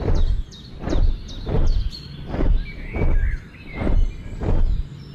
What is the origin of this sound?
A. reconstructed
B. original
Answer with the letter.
B